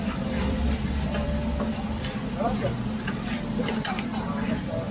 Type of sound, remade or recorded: remade